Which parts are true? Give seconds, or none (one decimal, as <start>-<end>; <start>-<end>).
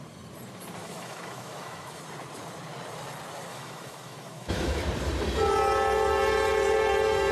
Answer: 0.0-0.8; 2.0-3.5; 4.8-7.3